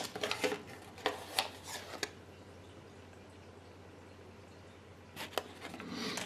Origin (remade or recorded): recorded